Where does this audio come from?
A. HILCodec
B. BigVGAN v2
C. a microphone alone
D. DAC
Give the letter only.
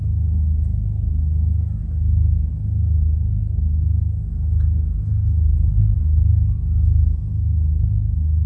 C